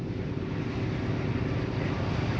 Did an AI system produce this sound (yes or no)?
no